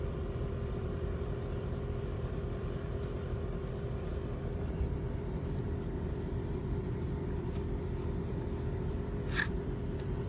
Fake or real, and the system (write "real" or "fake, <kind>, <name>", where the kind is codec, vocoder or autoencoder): fake, vocoder, BigVGAN v2